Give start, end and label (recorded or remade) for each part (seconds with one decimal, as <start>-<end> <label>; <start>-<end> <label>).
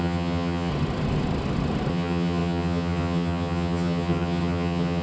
0.0-0.7 remade; 0.7-1.9 recorded; 1.9-5.0 remade